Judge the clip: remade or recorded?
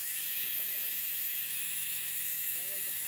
remade